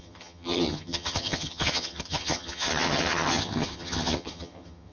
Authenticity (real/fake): fake